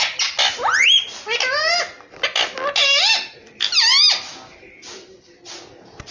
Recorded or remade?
recorded